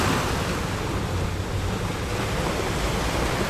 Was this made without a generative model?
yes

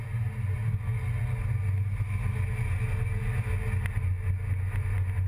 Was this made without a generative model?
yes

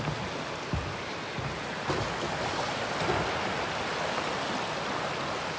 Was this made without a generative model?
yes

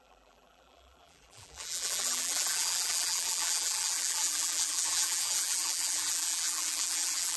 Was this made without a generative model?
no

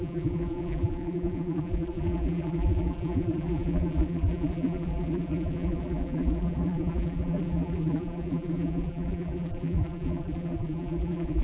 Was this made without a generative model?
no